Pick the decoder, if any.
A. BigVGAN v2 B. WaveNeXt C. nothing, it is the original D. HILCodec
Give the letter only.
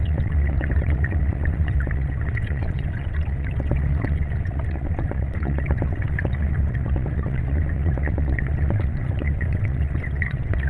B